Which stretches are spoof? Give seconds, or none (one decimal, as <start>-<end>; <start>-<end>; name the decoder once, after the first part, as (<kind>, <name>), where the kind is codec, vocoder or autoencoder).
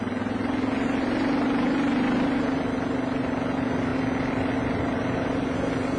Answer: none